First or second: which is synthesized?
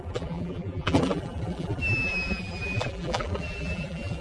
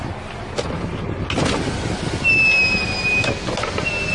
first